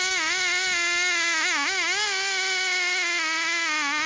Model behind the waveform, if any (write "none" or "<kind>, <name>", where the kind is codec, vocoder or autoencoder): none